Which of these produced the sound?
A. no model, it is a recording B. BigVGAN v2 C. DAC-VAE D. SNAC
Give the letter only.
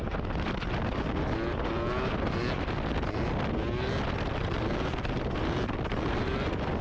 A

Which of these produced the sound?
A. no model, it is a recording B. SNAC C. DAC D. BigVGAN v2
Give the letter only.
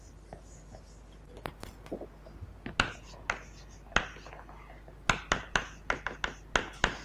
A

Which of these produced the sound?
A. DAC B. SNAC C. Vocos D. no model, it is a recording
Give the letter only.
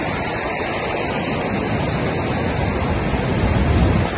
D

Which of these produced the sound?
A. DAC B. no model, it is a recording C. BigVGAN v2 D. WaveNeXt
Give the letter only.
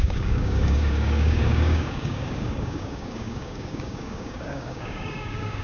A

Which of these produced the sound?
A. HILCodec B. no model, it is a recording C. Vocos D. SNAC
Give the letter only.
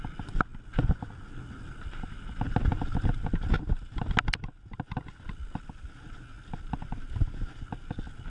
B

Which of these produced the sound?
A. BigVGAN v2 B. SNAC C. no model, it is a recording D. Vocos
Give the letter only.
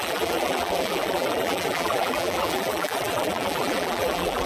A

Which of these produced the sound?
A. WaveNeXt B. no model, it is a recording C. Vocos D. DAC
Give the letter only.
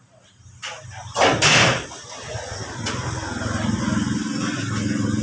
B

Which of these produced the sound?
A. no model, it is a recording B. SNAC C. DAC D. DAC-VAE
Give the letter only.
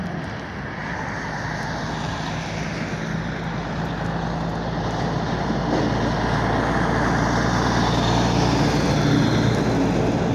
A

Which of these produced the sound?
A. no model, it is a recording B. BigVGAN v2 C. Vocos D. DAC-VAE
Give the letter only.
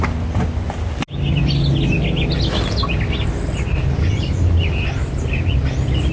A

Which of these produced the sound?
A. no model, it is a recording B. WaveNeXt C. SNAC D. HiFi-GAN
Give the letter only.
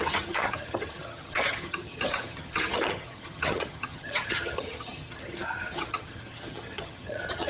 D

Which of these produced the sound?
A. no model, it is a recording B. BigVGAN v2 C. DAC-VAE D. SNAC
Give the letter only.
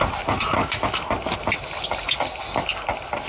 A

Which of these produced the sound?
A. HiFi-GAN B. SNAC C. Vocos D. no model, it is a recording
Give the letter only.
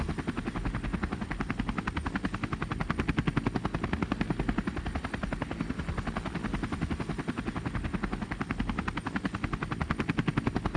D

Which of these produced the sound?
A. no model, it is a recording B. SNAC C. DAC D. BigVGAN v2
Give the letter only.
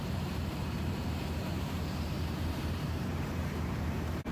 D